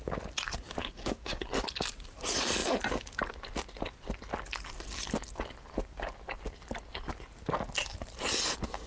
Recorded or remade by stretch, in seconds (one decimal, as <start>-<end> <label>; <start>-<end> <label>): 0.0-0.8 recorded; 0.8-1.4 remade; 1.4-8.9 recorded